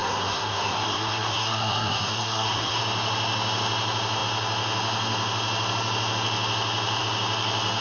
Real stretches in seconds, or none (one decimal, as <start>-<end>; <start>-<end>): 2.8-7.8